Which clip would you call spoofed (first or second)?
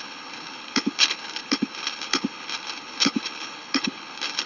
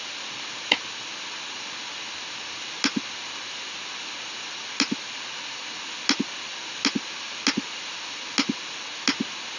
first